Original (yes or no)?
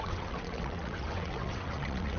no